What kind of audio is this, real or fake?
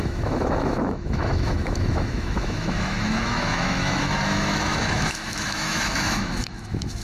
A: fake